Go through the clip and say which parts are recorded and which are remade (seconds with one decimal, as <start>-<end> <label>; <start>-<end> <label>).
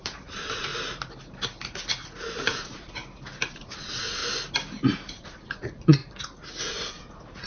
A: 0.0-0.7 remade; 0.7-2.2 recorded; 2.2-3.0 remade; 3.0-3.5 recorded; 3.5-4.2 remade; 4.2-5.1 recorded; 5.1-6.0 remade; 6.0-6.6 recorded; 6.6-7.5 remade